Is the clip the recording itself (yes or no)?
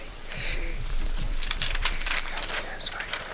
no